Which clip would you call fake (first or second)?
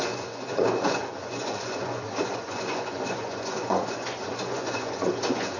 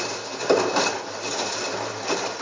first